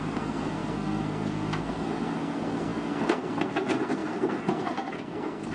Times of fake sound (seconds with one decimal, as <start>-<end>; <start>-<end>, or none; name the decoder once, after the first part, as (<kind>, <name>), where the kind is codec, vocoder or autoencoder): 0.0-5.5 (codec, SNAC)